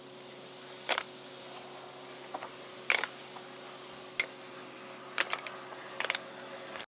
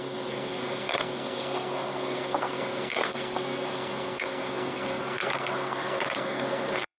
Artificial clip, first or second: second